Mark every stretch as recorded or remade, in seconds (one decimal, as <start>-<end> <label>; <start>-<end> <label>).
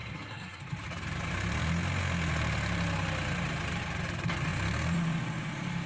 0.0-0.6 remade; 0.6-5.9 recorded